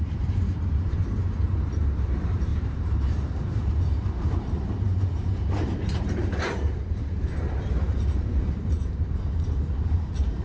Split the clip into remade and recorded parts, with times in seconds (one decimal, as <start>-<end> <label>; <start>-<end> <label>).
0.0-10.4 remade

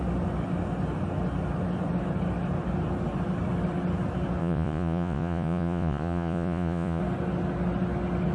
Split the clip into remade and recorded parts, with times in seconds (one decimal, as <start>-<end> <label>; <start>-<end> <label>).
0.0-4.4 recorded; 4.4-7.0 remade; 7.0-8.3 recorded